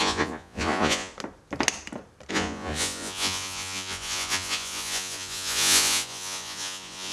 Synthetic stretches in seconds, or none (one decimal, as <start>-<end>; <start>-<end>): 0.0-1.1; 2.3-7.1